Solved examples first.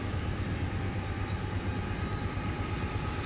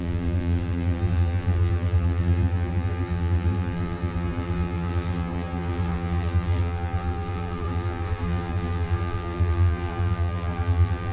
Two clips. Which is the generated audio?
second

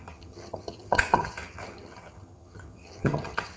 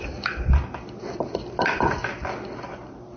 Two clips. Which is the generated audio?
first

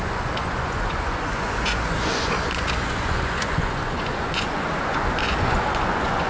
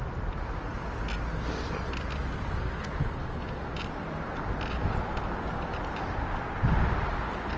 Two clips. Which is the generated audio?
first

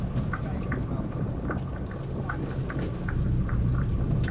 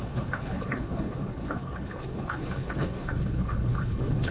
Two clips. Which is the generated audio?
second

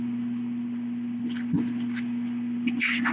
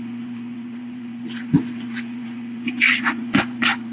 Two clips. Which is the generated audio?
second